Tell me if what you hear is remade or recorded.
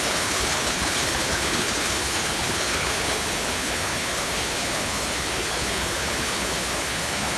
remade